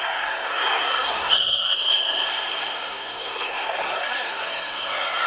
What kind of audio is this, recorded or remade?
remade